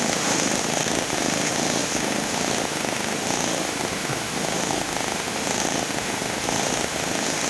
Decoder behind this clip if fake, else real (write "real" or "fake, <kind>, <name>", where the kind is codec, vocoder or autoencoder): fake, autoencoder, DAC-VAE